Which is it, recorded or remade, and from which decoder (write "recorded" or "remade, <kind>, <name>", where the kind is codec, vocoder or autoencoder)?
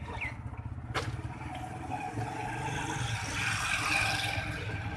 recorded